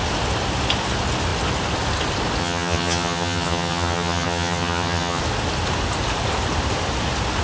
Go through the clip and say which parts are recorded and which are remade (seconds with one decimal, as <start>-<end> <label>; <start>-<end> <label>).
0.0-2.4 recorded; 2.4-5.2 remade; 5.2-7.4 recorded